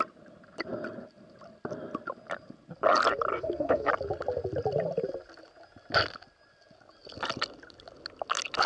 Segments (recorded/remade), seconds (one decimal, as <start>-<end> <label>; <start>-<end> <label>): 0.0-3.3 recorded; 3.3-3.9 remade; 3.9-8.7 recorded